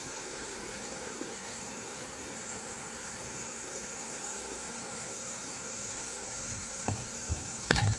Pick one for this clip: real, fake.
fake